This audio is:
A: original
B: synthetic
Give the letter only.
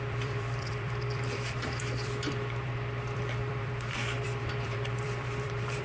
B